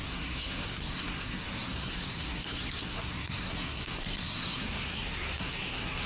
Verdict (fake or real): fake